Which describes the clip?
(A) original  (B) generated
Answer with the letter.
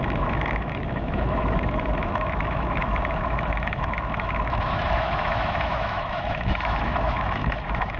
B